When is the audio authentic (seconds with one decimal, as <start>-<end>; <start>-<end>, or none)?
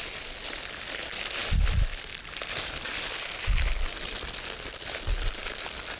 0.0-6.0